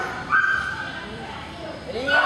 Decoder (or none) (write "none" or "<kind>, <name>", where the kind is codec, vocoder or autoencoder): none